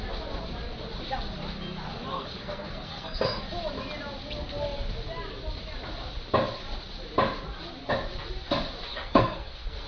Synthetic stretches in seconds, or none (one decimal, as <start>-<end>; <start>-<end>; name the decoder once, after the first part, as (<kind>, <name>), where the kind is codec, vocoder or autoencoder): 2.1-3.4 (codec, SNAC); 8.9-9.9